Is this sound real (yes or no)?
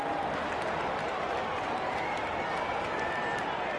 yes